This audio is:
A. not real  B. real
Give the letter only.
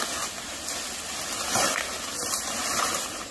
B